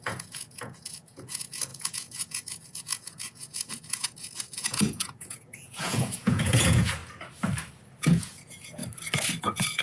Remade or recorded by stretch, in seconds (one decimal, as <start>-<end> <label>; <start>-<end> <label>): 0.0-7.0 remade; 7.0-8.0 recorded; 8.0-8.8 remade; 8.8-9.4 recorded; 9.4-9.8 remade